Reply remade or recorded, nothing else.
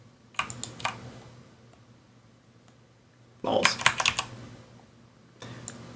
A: recorded